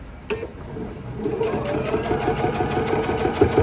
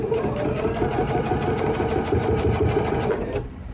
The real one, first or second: first